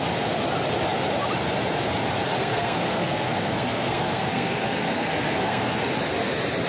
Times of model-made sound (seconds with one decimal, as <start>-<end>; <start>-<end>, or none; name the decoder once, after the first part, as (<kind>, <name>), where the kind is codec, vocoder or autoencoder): 2.4-5.8 (codec, SNAC)